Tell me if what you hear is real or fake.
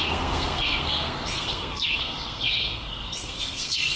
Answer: fake